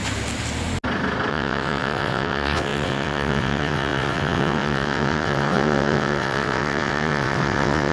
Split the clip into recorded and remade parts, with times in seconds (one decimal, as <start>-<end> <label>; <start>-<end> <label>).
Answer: 0.0-1.3 recorded; 1.3-7.9 remade